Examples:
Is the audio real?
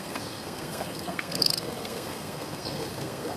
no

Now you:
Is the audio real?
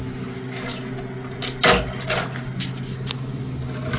yes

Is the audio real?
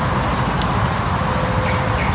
yes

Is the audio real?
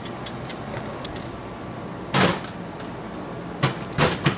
yes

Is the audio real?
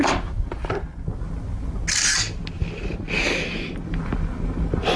yes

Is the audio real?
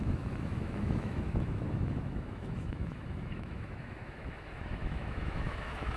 no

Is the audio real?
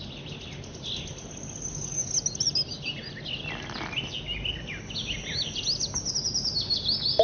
yes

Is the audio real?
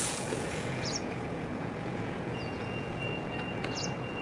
no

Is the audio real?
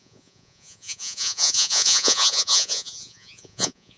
no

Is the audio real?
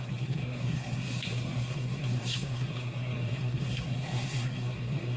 no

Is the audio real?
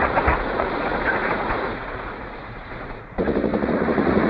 no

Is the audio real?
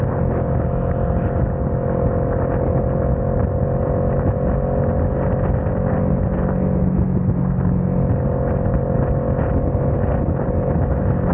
yes